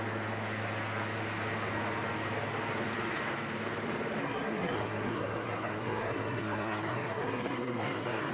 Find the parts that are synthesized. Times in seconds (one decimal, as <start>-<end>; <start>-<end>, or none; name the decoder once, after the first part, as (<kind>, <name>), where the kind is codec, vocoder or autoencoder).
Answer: 4.2-8.3 (codec, SNAC)